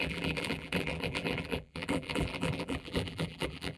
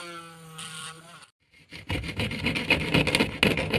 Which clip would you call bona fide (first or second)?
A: second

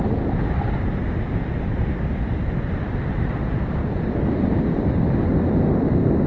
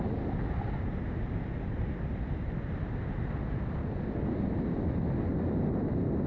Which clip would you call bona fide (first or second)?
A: second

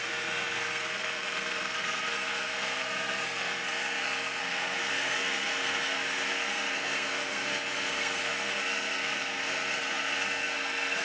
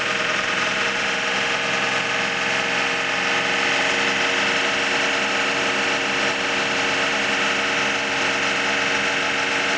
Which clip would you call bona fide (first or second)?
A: second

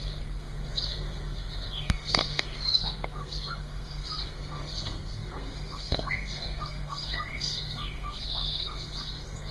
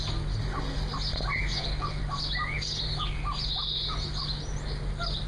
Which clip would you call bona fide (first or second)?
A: second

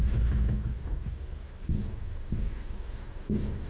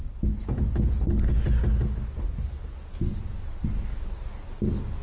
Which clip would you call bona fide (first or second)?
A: second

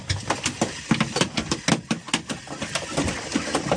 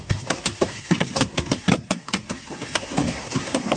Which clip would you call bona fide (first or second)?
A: first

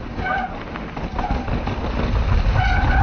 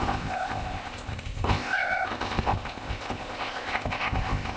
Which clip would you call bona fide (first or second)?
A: first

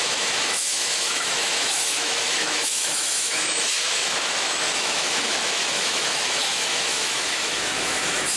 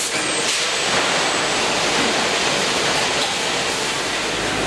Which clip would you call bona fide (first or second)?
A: second